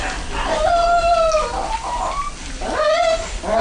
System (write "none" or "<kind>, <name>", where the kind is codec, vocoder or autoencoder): none